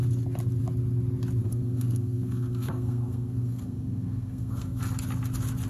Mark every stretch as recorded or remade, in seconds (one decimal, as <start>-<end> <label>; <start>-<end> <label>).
0.0-1.4 recorded; 1.4-4.8 remade; 4.8-5.7 recorded